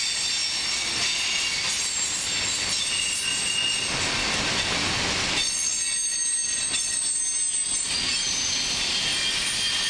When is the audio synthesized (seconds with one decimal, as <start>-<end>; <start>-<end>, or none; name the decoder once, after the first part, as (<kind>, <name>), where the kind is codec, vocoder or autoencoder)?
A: none